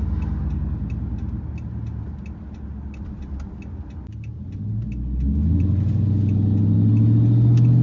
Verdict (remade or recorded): recorded